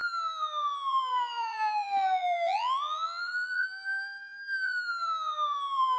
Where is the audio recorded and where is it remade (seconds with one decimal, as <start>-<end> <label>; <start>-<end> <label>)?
0.0-6.0 remade